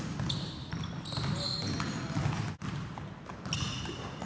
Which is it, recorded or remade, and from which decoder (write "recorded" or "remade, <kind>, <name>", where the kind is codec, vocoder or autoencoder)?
recorded